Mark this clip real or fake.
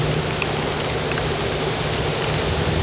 real